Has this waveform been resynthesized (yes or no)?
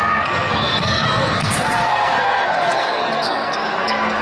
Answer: yes